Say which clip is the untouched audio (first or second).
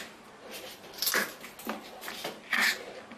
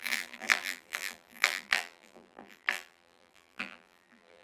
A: first